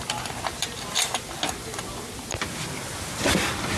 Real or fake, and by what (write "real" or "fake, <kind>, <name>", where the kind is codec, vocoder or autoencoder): real